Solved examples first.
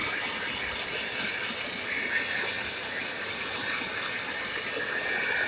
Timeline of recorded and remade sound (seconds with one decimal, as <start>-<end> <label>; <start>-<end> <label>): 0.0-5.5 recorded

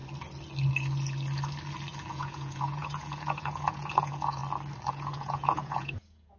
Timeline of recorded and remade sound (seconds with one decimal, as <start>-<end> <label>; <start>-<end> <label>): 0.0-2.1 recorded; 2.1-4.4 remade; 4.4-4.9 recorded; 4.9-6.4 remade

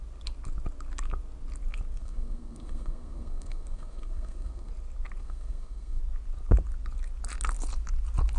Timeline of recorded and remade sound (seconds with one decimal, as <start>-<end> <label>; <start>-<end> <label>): 0.0-2.0 recorded; 2.0-4.7 remade; 4.7-5.2 recorded; 5.2-6.0 remade; 6.0-8.4 recorded

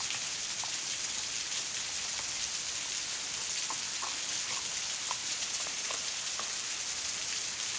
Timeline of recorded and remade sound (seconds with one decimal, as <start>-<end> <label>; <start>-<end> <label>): 0.0-5.2 recorded; 5.2-5.9 remade; 5.9-7.8 recorded